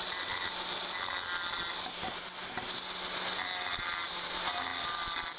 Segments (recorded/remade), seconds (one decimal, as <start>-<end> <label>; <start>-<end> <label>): 0.0-5.4 recorded